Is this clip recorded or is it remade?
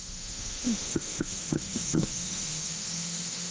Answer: remade